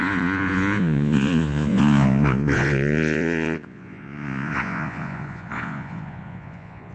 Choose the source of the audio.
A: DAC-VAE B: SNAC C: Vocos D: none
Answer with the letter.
C